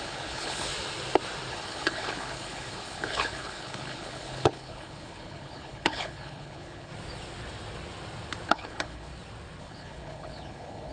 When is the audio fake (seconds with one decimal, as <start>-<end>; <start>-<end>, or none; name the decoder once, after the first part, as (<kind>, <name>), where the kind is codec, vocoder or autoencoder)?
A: 0.0-0.7 (codec, HILCodec); 1.5-6.9; 8.5-9.1; 9.6-10.9